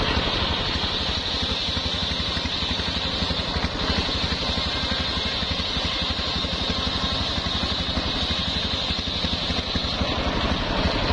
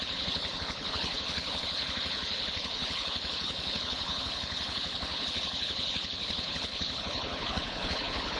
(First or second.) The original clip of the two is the first